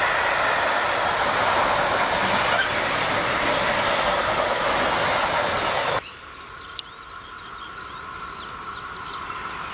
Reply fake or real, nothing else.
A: real